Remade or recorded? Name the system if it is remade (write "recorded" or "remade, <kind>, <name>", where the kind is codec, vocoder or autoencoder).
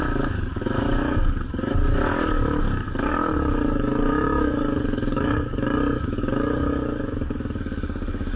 remade, codec, DAC